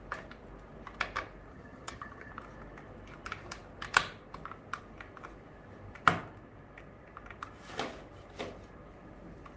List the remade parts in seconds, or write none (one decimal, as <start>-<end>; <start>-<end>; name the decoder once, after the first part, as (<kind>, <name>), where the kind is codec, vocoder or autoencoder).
1.5-2.3 (vocoder, HiFi-GAN)